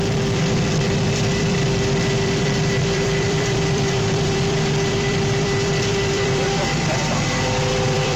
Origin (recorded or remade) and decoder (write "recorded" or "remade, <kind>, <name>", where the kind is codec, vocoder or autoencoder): remade, vocoder, BigVGAN v2